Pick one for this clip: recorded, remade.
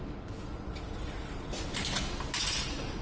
recorded